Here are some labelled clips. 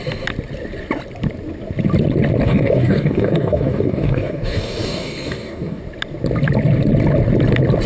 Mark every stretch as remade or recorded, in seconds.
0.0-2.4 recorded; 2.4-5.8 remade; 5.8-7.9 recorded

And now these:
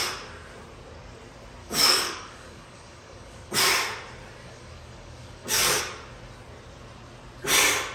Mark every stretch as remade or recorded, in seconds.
0.0-1.6 recorded; 1.6-3.5 remade; 3.5-4.4 recorded; 4.4-5.8 remade; 5.8-7.9 recorded

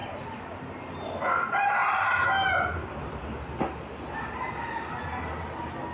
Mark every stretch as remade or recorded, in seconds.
0.0-5.9 recorded